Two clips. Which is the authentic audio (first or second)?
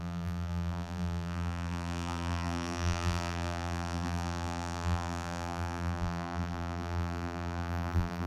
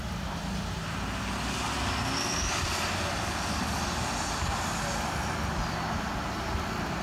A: second